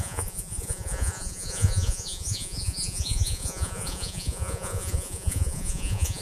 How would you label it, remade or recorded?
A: remade